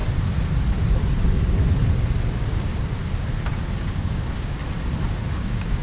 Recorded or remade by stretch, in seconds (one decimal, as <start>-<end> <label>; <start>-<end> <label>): 0.0-2.3 recorded; 2.3-2.7 remade; 2.7-3.9 recorded; 3.9-4.6 remade; 4.6-5.3 recorded; 5.3-5.8 remade

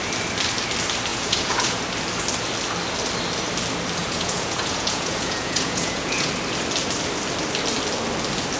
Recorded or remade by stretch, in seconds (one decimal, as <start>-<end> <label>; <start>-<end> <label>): 0.0-1.1 recorded; 1.1-1.8 remade; 1.8-4.0 recorded; 4.0-6.3 remade; 6.3-8.6 recorded

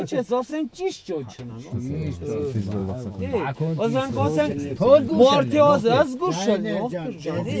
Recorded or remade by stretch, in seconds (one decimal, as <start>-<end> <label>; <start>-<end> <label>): 0.0-0.5 recorded; 0.5-1.5 remade; 1.5-2.8 recorded; 2.8-4.5 remade; 4.5-7.6 recorded

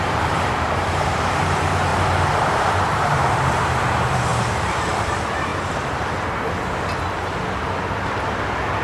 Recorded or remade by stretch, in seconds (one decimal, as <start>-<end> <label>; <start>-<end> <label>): 0.0-1.9 remade; 1.9-2.6 recorded; 2.6-5.5 remade; 5.5-8.8 recorded